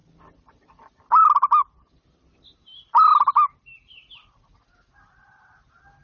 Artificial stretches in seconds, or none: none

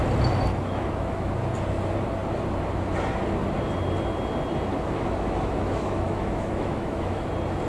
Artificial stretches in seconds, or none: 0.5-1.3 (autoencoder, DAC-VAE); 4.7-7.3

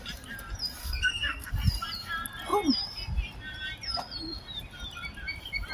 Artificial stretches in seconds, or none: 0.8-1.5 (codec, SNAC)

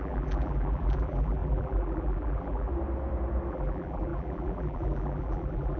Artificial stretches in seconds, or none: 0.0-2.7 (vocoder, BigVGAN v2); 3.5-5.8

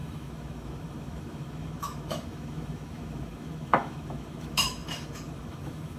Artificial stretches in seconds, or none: 0.0-6.0 (autoencoder, DAC-VAE)

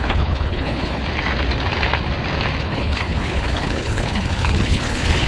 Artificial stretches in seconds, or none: 0.0-1.0 (codec, HILCodec); 2.6-5.3

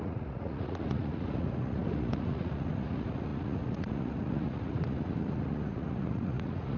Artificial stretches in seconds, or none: 0.0-6.8 (vocoder, Vocos)

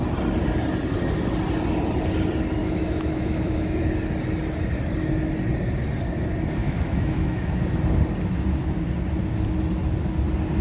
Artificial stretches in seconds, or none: 2.6-3.8 (autoencoder, DAC-VAE); 6.6-7.5